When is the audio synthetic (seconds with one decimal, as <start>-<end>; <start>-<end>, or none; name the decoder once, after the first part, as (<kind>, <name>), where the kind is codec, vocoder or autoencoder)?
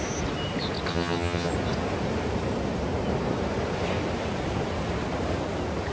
0.9-1.5 (vocoder, HiFi-GAN)